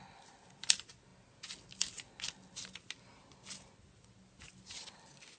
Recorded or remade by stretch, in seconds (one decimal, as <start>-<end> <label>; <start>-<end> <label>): 0.0-5.4 recorded